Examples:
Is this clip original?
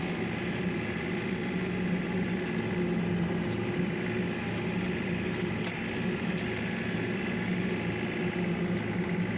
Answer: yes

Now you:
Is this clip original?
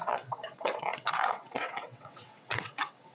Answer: no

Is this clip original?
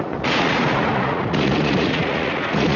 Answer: no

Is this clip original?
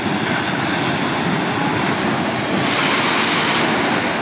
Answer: yes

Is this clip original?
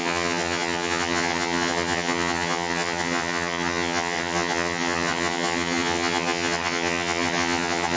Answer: no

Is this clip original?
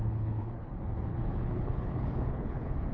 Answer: no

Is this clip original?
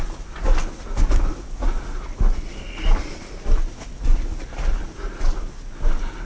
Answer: yes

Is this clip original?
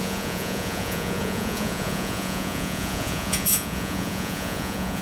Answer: no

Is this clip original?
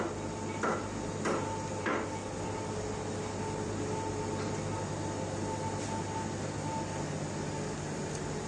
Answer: yes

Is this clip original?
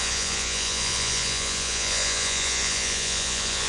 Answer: no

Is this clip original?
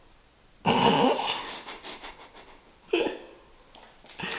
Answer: yes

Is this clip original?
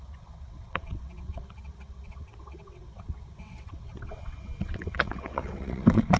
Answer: no